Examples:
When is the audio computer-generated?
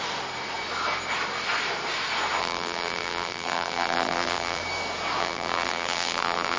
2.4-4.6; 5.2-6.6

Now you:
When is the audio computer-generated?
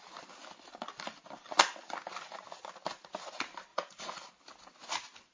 3.7-4.3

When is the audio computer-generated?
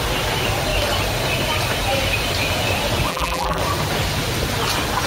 3.1-3.6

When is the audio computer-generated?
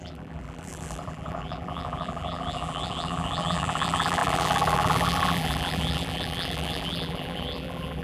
0.0-8.0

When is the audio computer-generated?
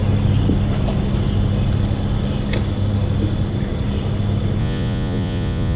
4.6-5.8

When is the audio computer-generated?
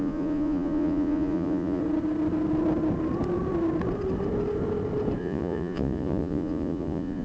0.0-1.8; 5.2-7.2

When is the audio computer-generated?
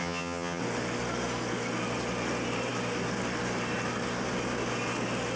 0.0-0.6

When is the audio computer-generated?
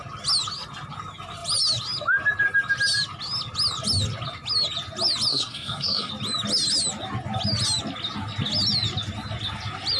5.3-6.1